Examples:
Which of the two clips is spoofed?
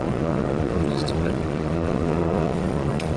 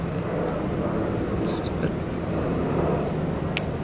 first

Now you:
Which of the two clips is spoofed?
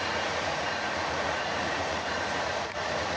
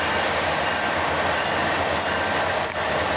first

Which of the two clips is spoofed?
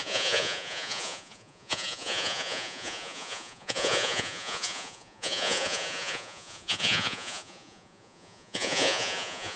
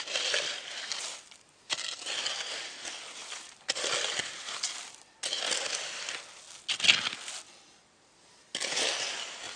first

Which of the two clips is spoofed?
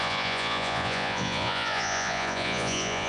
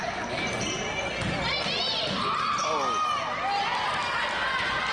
first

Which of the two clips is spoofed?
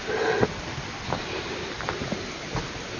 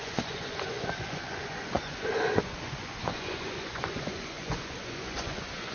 second